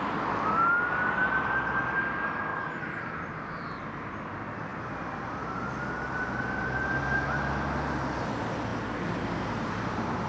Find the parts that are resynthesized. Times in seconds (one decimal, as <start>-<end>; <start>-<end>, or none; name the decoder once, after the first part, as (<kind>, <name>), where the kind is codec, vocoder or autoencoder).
1.2-1.8 (vocoder, BigVGAN v2); 4.7-7.0; 8.7-10.3